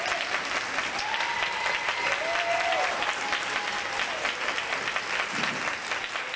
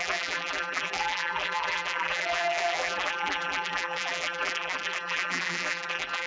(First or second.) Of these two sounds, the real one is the first